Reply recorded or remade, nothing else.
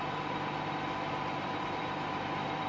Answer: recorded